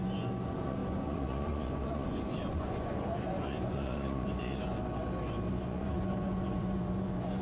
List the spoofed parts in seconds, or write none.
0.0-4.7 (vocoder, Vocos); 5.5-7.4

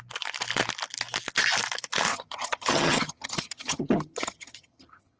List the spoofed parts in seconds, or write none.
2.1-5.2 (vocoder, HiFi-GAN)